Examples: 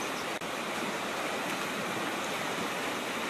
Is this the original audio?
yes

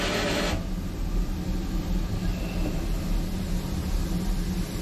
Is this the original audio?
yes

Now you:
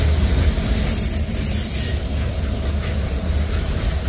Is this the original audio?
yes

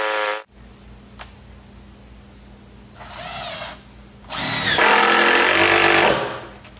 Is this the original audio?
yes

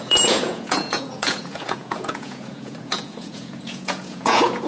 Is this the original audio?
no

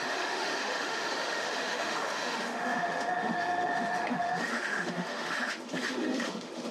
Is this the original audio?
no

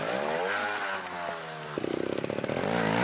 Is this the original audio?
yes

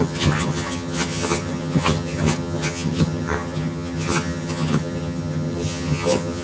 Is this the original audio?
no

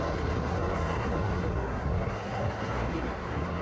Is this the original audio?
no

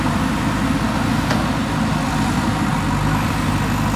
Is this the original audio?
yes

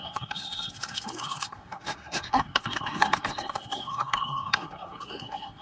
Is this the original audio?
no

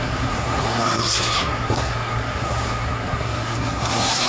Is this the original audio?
no